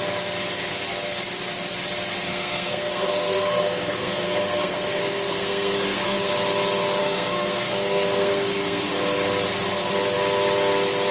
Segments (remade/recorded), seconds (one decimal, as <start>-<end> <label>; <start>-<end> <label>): 0.0-2.3 recorded; 2.3-6.3 remade; 6.3-7.0 recorded; 7.0-8.9 remade; 8.9-11.1 recorded